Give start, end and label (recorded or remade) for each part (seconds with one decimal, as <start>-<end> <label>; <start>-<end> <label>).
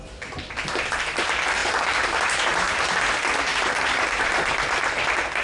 0.0-1.6 recorded; 1.6-2.8 remade; 2.8-3.5 recorded; 3.5-4.3 remade; 4.3-5.4 recorded